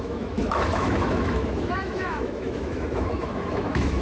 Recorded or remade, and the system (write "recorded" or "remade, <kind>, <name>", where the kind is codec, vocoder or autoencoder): remade, autoencoder, DAC-VAE